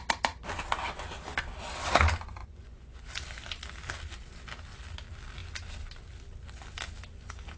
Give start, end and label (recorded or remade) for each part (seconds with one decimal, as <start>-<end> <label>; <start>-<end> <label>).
0.0-2.4 recorded; 2.4-3.1 remade; 3.1-7.6 recorded

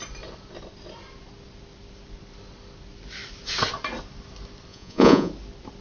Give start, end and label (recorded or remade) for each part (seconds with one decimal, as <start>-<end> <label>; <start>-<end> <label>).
0.0-4.7 recorded; 4.7-5.3 remade; 5.3-5.8 recorded

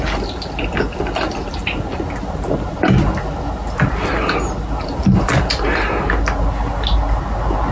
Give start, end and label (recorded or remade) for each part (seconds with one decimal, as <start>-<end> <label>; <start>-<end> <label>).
0.0-7.7 recorded

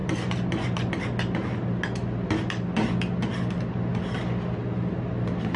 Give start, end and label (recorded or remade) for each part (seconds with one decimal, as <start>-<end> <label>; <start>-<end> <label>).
0.0-5.6 recorded